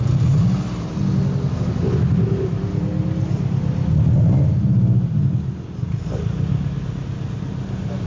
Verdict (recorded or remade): recorded